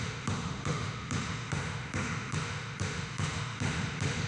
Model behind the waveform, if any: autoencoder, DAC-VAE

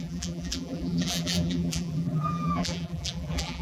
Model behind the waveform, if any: vocoder, BigVGAN v2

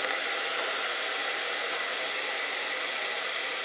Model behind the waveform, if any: none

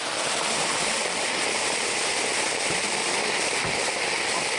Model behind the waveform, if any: none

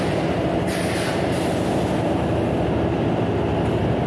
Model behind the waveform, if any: none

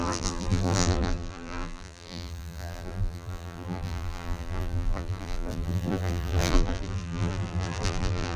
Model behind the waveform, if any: vocoder, BigVGAN v2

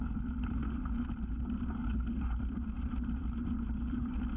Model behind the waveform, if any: none